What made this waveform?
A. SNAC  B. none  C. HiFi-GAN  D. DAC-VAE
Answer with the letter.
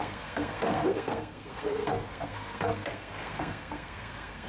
A